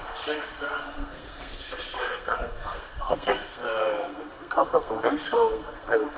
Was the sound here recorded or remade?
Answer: remade